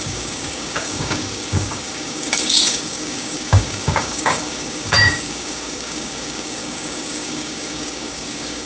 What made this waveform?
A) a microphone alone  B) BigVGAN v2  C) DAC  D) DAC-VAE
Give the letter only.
C